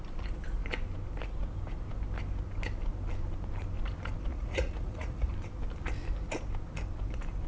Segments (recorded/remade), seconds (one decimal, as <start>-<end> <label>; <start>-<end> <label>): 0.0-4.3 recorded; 4.3-5.3 remade; 5.3-7.5 recorded